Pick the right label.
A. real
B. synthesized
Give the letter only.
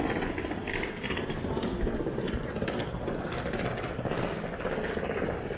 A